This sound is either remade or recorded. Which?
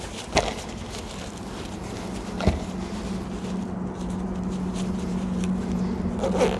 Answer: recorded